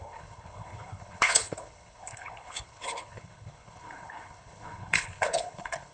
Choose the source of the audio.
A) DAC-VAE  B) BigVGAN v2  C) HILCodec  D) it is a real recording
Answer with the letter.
C